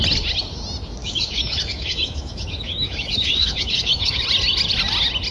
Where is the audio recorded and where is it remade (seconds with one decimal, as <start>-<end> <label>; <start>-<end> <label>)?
0.0-1.0 recorded; 1.0-4.2 remade; 4.2-5.3 recorded